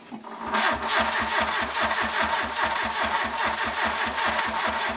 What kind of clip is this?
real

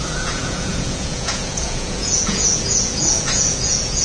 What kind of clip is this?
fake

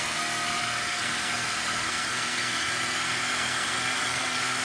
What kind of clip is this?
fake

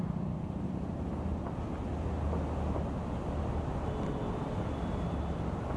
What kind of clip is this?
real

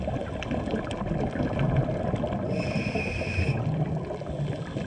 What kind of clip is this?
real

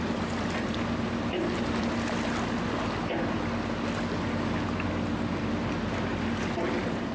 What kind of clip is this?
real